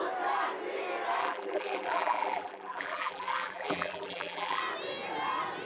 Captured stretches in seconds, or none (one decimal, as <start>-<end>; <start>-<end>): 0.0-1.2; 4.6-5.6